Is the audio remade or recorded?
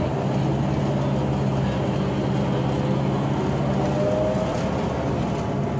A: recorded